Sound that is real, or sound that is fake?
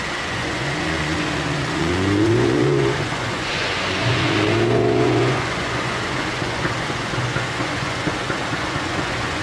fake